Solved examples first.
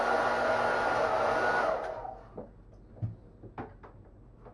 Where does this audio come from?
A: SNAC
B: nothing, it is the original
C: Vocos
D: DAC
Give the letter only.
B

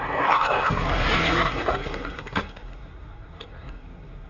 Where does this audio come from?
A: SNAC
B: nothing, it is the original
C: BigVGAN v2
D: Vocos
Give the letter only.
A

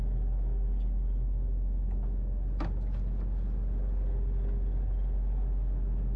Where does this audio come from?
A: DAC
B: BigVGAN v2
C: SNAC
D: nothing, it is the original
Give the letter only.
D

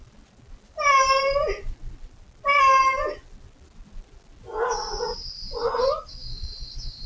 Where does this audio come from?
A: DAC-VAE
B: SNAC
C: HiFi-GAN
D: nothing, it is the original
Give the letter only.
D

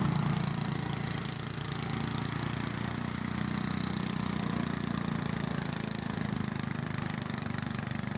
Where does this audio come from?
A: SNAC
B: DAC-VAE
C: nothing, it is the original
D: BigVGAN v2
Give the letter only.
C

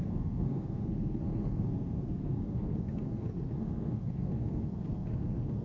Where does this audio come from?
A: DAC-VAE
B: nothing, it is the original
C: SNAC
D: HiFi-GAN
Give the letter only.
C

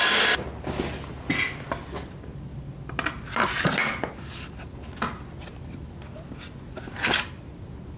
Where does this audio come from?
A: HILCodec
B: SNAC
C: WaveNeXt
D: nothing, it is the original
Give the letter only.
D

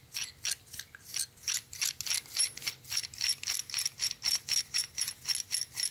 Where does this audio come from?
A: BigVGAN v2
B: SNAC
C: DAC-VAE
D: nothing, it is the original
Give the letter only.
D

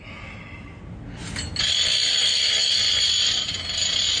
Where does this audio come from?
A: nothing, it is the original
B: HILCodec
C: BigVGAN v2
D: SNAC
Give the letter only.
A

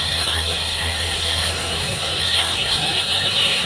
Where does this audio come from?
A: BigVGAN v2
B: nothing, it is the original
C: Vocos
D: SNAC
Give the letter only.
D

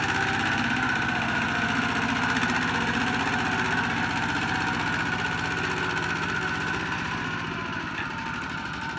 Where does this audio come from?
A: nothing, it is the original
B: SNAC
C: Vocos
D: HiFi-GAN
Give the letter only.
A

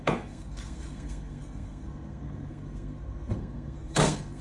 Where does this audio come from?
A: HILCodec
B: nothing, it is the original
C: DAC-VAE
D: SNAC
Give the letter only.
D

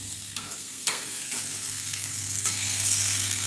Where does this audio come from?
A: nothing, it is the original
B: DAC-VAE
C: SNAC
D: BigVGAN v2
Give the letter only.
C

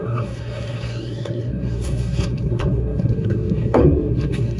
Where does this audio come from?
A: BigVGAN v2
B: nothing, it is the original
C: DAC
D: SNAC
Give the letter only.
D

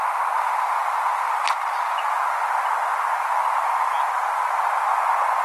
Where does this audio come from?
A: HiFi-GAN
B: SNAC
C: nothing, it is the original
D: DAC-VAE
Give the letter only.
C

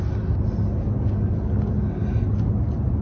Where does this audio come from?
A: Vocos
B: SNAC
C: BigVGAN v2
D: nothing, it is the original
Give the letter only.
D